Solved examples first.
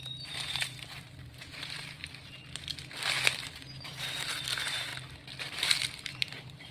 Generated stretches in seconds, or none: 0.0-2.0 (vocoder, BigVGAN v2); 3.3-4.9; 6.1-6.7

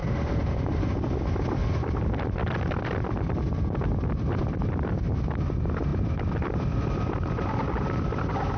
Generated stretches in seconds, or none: 0.0-0.6 (vocoder, BigVGAN v2); 1.6-4.9; 5.9-7.0

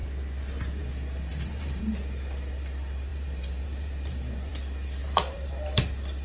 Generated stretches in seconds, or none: 1.3-1.8 (vocoder, BigVGAN v2); 3.1-4.5; 5.0-5.8

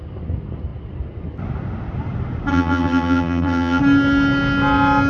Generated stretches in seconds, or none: 2.5-3.8 (vocoder, BigVGAN v2)

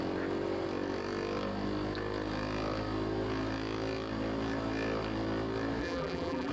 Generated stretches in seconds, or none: 5.8-6.5 (vocoder, BigVGAN v2)

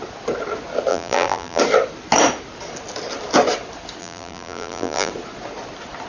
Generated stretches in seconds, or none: 0.9-1.6 (vocoder, BigVGAN v2); 4.0-5.1